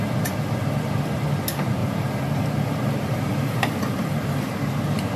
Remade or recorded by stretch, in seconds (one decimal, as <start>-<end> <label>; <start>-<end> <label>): 0.0-1.8 recorded; 1.8-4.8 remade; 4.8-5.2 recorded